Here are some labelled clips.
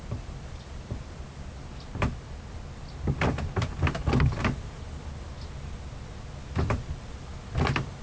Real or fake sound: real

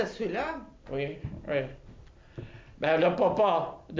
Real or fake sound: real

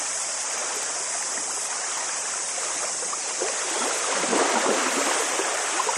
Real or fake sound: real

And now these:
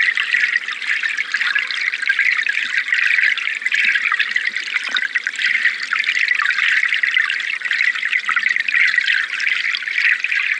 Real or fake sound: real